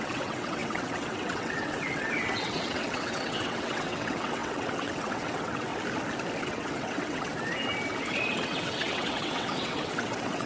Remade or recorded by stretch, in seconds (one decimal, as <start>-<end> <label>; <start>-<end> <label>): 0.0-5.7 remade; 5.7-6.4 recorded; 6.4-7.3 remade; 7.3-8.3 recorded; 8.3-10.5 remade